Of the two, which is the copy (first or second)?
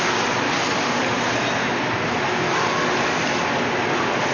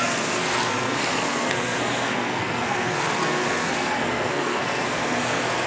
second